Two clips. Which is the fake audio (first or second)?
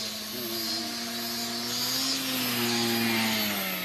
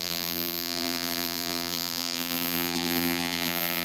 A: second